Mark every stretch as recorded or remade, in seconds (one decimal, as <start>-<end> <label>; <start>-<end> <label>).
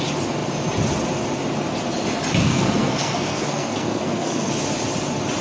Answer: 0.0-2.4 recorded; 2.4-4.5 remade; 4.5-5.4 recorded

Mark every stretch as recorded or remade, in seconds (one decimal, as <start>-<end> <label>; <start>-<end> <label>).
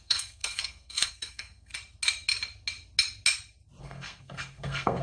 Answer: 0.0-1.7 remade; 1.7-3.8 recorded; 3.8-5.0 remade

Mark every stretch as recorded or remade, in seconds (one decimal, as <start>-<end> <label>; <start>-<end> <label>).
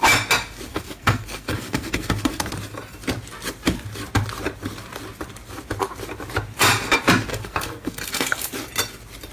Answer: 0.0-0.7 recorded; 0.7-2.5 remade; 2.5-7.3 recorded; 7.3-8.5 remade; 8.5-9.3 recorded